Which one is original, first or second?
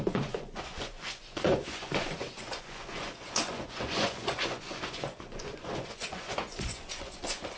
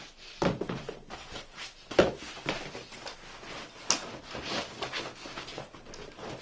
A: second